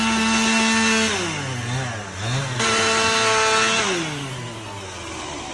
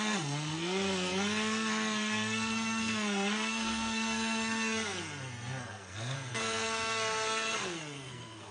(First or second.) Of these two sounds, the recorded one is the first